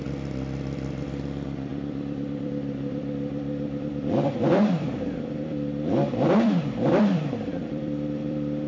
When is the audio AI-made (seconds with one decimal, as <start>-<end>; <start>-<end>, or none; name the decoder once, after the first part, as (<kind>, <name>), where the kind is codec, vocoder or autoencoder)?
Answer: 0.0-8.7 (vocoder, BigVGAN v2)